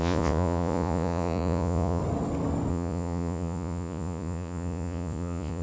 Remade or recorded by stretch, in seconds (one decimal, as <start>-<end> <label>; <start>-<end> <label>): 0.0-2.0 remade; 2.0-2.7 recorded; 2.7-5.6 remade